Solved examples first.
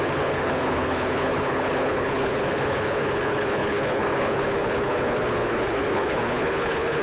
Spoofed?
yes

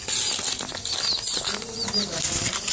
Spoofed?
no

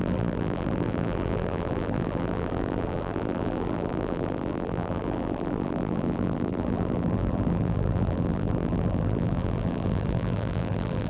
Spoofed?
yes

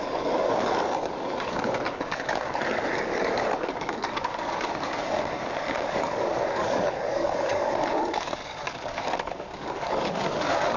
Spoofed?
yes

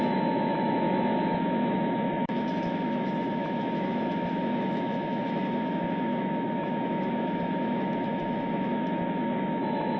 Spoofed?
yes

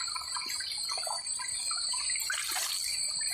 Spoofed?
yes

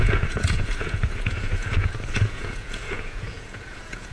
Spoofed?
yes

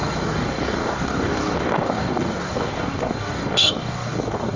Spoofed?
yes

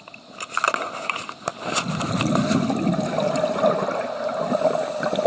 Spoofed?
no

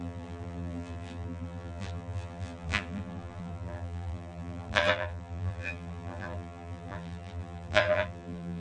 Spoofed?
yes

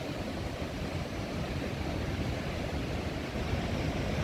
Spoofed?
no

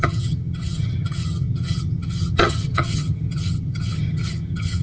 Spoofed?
yes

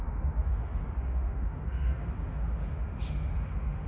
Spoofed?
yes